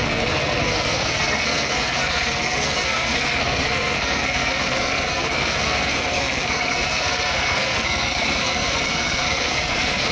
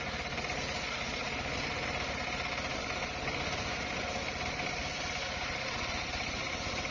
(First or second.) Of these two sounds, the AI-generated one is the first